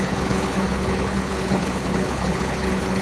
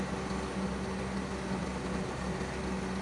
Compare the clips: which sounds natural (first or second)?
second